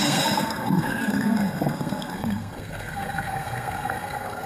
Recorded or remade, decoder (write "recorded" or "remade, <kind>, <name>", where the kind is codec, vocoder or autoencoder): remade, codec, SNAC